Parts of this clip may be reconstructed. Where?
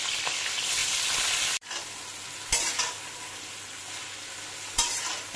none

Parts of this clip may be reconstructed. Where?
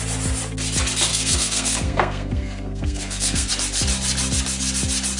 1.1-3.5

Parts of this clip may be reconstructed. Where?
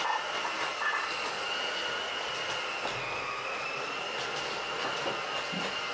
none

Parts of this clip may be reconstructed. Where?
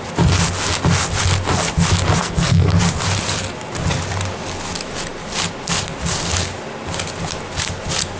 2.2-2.8